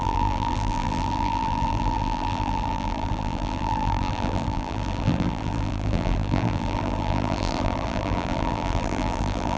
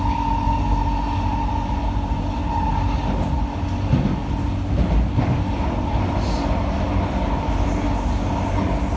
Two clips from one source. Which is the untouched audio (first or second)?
second